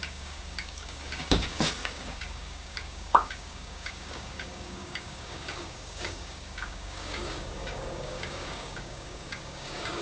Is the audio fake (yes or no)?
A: yes